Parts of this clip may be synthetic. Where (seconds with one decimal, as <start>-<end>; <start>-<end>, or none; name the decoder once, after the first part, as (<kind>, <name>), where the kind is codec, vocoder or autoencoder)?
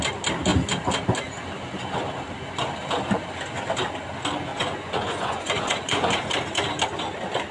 4.5-6.3 (vocoder, Vocos)